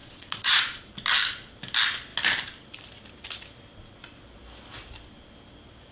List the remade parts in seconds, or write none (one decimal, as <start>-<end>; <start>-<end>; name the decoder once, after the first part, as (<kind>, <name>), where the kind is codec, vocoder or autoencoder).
0.0-0.9 (vocoder, Vocos)